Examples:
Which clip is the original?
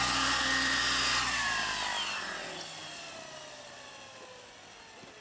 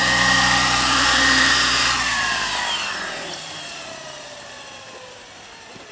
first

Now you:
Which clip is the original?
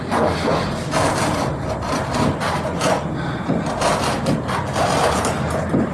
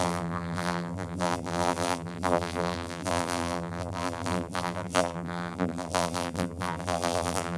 first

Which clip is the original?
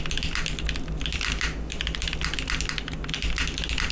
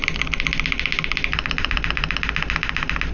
first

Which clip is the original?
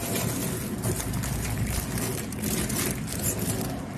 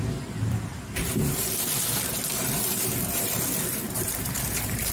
first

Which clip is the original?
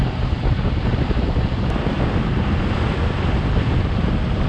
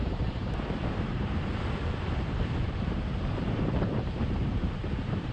first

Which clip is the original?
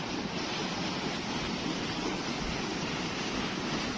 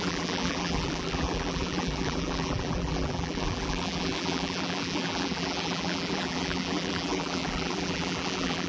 first